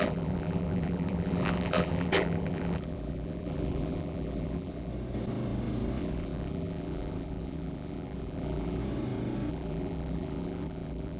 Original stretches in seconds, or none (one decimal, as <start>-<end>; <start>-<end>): 4.9-6.0; 8.8-9.5